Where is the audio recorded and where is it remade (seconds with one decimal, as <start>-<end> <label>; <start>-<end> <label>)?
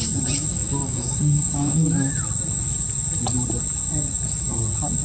0.0-0.5 recorded; 0.5-2.1 remade; 2.1-5.0 recorded